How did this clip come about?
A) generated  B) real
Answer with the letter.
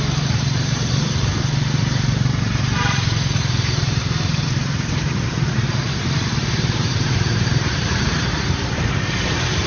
A